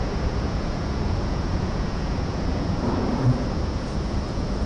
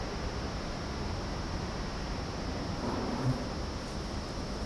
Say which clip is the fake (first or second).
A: first